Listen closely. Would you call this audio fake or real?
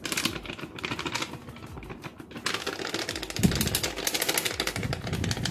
real